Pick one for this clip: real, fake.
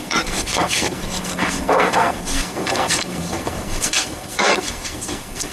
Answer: fake